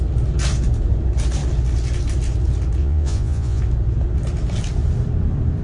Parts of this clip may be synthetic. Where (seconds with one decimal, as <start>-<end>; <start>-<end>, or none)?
2.8-3.6